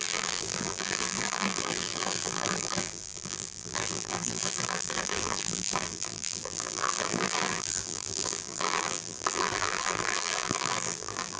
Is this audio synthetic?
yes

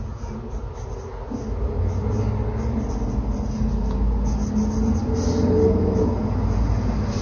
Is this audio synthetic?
no